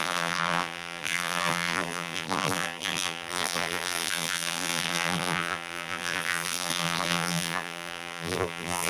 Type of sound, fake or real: fake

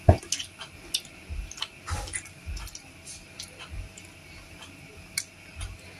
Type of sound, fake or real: real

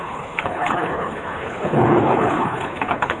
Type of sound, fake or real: fake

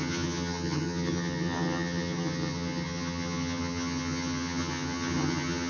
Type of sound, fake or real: fake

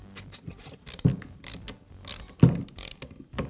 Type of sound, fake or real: real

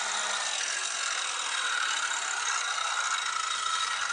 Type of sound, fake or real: real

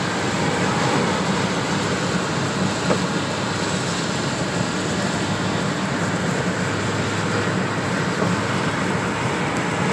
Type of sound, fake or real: real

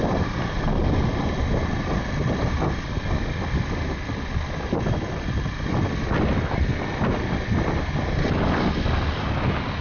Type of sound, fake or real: real